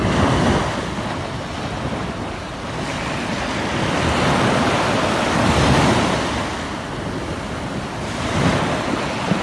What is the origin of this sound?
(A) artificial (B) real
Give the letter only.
B